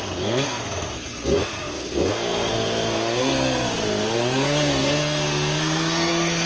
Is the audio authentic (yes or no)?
no